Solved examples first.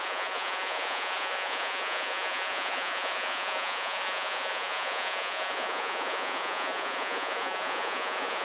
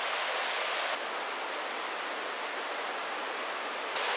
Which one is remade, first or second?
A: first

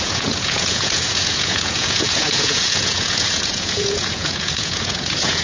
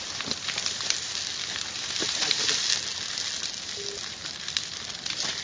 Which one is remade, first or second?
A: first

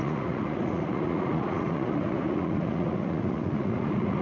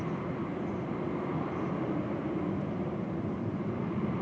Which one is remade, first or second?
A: first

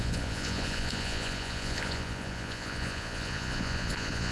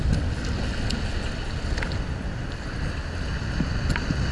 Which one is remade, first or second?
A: first